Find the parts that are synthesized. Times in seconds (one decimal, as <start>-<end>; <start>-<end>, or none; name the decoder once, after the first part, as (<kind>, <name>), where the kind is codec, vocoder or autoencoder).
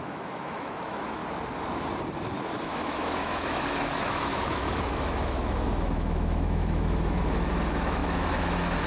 0.0-1.2 (autoencoder, DAC-VAE); 2.6-8.9